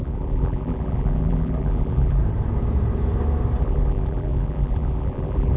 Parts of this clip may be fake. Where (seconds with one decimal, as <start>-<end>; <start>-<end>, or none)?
0.0-2.2; 3.6-5.6